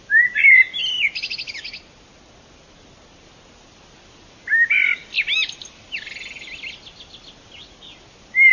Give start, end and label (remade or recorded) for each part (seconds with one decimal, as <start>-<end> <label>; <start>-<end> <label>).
0.0-8.5 recorded